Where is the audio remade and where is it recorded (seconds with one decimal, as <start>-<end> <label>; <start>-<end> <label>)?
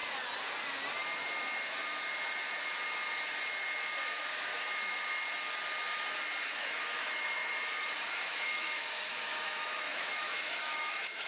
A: 0.0-4.0 recorded; 4.0-4.5 remade; 4.5-6.4 recorded; 6.4-7.4 remade; 7.4-8.1 recorded; 8.1-11.3 remade